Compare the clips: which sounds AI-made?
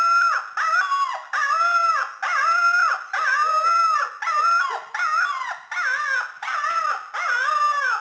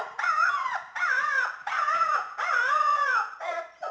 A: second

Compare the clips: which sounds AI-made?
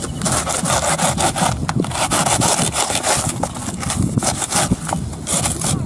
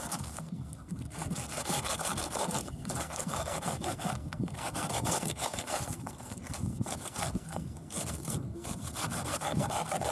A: second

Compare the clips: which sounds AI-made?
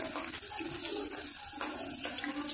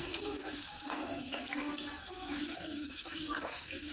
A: second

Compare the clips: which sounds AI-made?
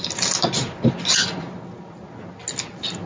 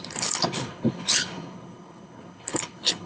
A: second